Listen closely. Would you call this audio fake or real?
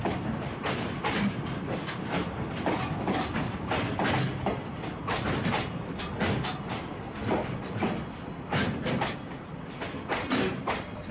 real